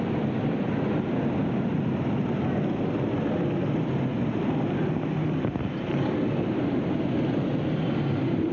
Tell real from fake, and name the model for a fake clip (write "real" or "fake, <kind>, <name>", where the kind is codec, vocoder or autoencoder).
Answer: real